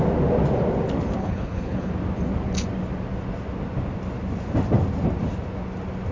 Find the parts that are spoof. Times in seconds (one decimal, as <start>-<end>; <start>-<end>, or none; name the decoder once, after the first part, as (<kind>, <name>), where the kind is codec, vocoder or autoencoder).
1.2-1.9 (codec, HILCodec)